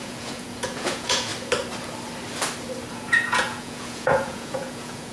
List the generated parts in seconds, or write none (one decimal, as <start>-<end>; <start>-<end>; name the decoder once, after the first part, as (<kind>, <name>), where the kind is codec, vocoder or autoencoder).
0.0-1.3 (vocoder, Vocos); 2.9-5.1